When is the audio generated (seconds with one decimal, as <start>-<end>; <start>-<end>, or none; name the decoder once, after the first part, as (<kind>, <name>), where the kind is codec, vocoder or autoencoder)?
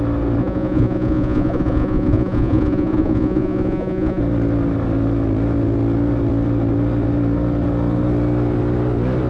0.4-4.2 (vocoder, Vocos)